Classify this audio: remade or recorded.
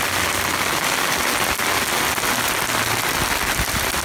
recorded